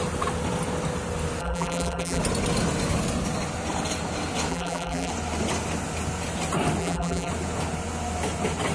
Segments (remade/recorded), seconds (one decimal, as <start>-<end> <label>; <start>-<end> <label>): 0.0-1.4 recorded; 1.4-2.2 remade; 2.2-4.5 recorded; 4.5-5.1 remade; 5.1-6.8 recorded; 6.8-7.3 remade; 7.3-8.7 recorded